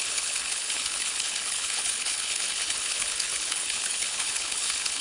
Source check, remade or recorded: remade